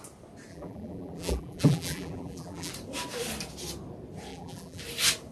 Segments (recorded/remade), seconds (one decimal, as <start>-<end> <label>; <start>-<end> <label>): 0.0-0.5 recorded; 0.5-2.7 remade; 2.7-4.3 recorded; 4.3-4.8 remade; 4.8-5.3 recorded